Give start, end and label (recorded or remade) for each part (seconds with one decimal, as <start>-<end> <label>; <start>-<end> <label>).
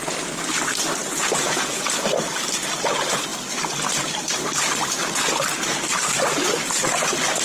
0.0-1.0 recorded; 1.0-1.9 remade; 1.9-7.4 recorded